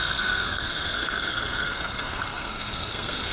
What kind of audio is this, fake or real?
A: fake